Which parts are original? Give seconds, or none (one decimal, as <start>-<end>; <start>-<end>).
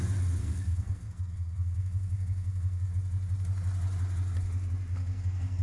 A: 0.0-0.4; 2.9-4.9